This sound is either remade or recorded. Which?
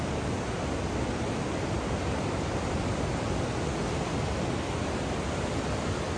recorded